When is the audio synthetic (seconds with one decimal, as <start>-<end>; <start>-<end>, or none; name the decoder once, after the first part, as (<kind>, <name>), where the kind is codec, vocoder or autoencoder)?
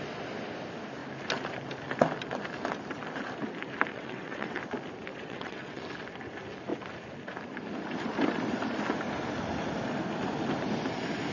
3.9-4.6 (vocoder, WaveNeXt); 5.1-5.8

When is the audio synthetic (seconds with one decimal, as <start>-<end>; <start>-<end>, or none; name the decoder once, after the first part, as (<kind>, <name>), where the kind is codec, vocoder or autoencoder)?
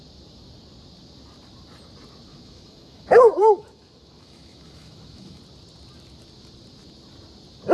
2.3-5.4 (autoencoder, DAC-VAE)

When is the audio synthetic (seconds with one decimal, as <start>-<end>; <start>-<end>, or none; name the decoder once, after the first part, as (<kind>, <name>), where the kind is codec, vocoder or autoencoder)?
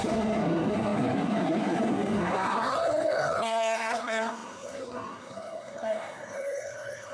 0.0-7.1 (codec, SNAC)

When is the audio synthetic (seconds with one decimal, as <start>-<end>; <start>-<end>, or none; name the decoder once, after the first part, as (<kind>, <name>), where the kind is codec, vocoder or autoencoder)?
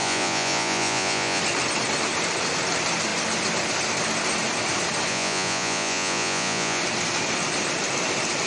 0.0-1.4 (vocoder, Vocos); 5.1-6.8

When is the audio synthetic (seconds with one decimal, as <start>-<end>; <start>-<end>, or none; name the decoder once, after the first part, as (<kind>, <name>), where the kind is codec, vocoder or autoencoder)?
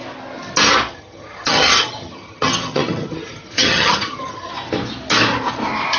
0.9-4.5 (vocoder, HiFi-GAN)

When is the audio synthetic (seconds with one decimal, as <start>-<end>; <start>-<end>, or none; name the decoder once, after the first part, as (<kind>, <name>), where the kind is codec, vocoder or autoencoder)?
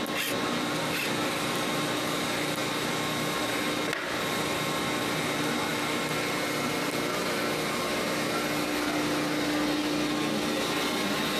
none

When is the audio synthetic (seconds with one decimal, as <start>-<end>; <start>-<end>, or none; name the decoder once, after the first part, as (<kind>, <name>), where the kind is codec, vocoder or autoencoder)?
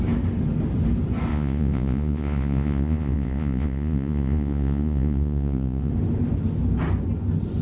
1.3-5.9 (vocoder, Vocos)